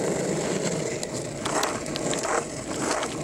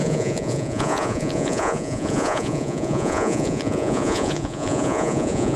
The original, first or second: first